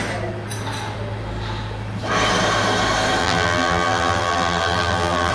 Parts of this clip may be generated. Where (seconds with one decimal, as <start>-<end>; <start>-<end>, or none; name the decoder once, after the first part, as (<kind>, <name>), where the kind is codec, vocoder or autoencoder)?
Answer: 3.2-5.3 (vocoder, BigVGAN v2)